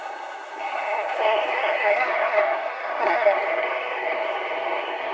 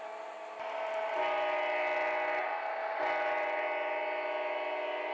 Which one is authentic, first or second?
second